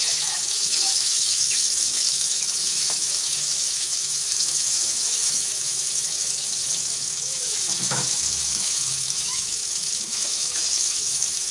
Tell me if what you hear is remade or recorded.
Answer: remade